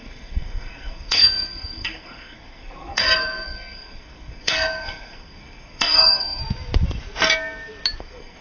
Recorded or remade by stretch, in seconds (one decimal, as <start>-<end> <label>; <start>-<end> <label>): 0.0-6.4 remade; 6.4-8.0 recorded; 8.0-8.4 remade